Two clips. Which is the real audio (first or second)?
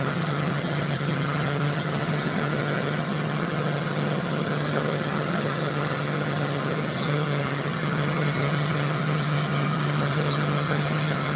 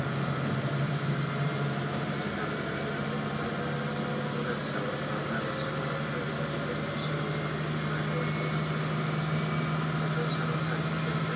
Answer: second